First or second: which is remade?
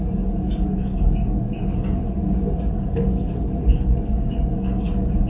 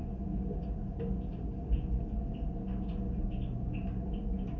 first